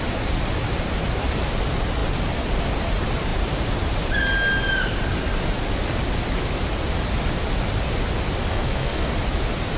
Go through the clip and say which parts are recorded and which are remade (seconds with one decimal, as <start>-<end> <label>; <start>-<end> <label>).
0.0-8.5 recorded; 8.5-9.1 remade; 9.1-9.8 recorded